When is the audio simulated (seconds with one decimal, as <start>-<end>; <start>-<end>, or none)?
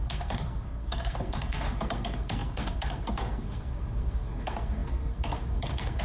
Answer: 0.0-6.0